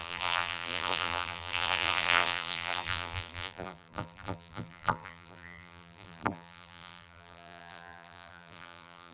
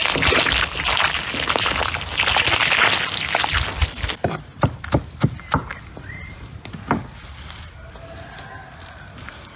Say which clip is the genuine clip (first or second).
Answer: second